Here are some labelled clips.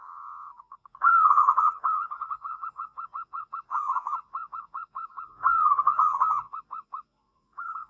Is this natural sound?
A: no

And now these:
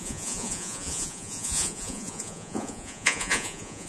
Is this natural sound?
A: no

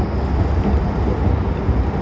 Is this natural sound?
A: yes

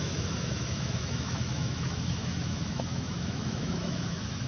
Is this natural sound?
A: no